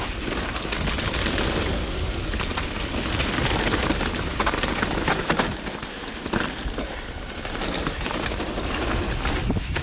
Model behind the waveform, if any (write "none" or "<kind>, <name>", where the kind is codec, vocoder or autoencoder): none